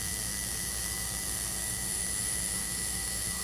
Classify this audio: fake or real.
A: fake